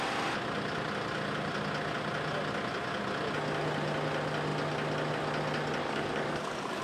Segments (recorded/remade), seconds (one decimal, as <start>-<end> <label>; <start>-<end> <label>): 0.0-5.8 recorded; 5.8-6.8 remade